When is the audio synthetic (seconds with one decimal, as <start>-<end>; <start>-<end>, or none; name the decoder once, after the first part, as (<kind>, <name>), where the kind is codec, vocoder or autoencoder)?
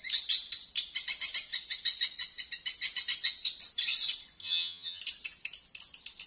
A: 4.4-5.0 (vocoder, HiFi-GAN)